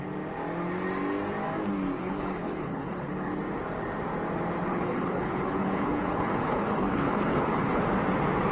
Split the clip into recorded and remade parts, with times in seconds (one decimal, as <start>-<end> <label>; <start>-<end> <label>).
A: 0.0-2.0 recorded; 2.0-3.4 remade; 3.4-4.7 recorded; 4.7-7.8 remade; 7.8-8.5 recorded

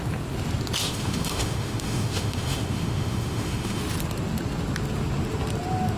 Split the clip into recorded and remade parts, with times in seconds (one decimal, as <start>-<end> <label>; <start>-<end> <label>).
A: 0.0-0.8 recorded; 0.8-3.8 remade; 3.8-6.0 recorded

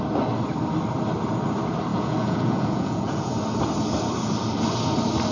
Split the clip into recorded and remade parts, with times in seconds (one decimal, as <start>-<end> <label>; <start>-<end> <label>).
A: 0.0-1.9 recorded; 1.9-3.3 remade; 3.3-5.3 recorded

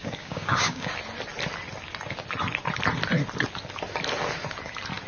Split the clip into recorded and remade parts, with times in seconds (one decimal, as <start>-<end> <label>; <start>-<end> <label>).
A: 0.0-0.9 remade; 0.9-5.1 recorded

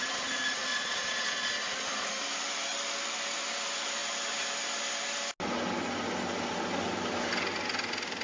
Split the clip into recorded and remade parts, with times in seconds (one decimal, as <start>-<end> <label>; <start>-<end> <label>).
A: 0.0-0.7 recorded; 0.7-1.5 remade; 1.5-8.2 recorded

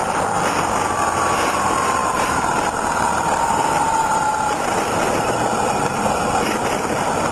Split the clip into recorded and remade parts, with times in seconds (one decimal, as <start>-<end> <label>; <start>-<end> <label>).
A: 0.0-2.0 recorded; 2.0-6.4 remade; 6.4-7.3 recorded

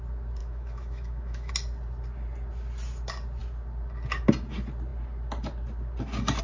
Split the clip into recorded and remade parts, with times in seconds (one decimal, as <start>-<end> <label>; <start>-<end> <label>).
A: 0.0-0.4 recorded; 0.4-1.5 remade; 1.5-6.4 recorded

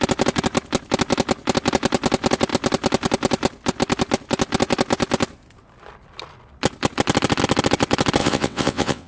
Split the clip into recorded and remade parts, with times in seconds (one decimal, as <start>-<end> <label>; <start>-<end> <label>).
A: 0.0-8.2 recorded; 8.2-9.1 remade